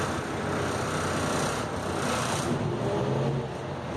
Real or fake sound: real